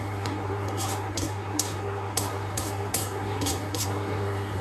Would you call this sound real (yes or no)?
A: no